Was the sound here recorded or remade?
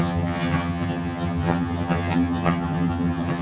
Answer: remade